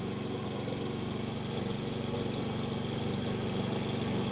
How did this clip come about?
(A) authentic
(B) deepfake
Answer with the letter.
A